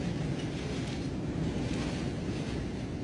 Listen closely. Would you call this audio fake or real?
real